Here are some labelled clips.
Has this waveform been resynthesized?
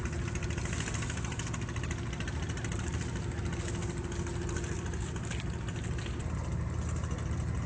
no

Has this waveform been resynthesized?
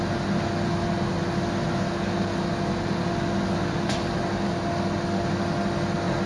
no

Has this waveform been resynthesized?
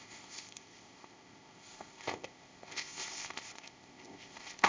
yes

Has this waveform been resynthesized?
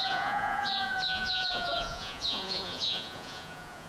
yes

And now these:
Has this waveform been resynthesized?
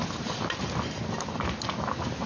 no